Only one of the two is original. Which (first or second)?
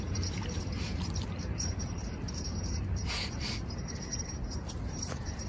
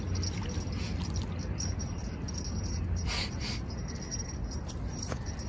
second